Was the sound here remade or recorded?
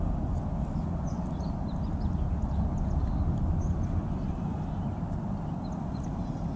recorded